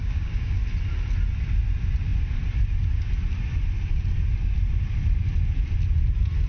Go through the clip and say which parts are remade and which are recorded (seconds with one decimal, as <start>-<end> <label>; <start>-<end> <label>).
0.0-0.6 remade; 0.6-6.5 recorded